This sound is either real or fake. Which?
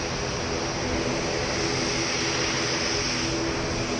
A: real